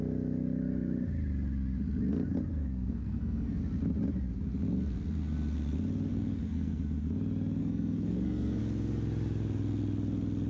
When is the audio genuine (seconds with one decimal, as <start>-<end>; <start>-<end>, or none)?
0.0-2.5; 3.6-6.1; 6.8-7.6; 8.6-10.5